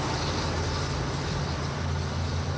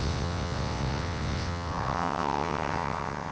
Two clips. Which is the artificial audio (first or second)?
second